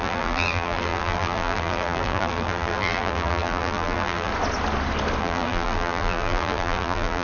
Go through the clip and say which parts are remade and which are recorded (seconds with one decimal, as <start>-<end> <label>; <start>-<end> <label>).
0.0-4.3 remade; 4.3-5.2 recorded; 5.2-7.2 remade